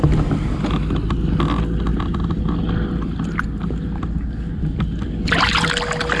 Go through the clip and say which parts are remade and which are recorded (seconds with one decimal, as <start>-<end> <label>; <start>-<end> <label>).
0.0-6.2 recorded